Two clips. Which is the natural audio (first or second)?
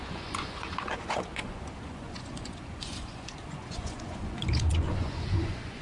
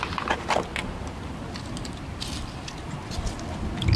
second